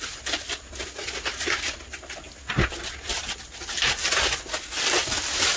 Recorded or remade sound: recorded